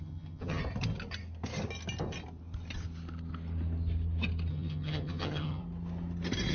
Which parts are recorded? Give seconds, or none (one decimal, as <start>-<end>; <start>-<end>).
0.6-4.5; 5.6-6.5

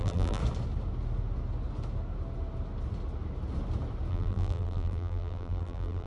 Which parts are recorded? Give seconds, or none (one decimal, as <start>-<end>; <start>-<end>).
0.4-4.1

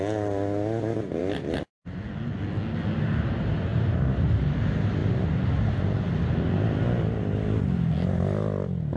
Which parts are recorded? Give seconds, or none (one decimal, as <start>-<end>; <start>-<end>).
0.0-9.0